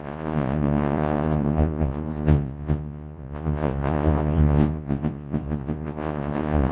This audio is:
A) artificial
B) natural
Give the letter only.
A